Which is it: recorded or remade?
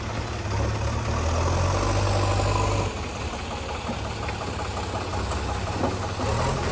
recorded